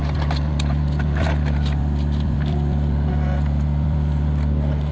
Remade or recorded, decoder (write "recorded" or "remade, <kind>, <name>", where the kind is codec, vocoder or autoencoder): recorded